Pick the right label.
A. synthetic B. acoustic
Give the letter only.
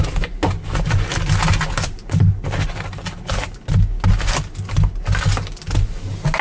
B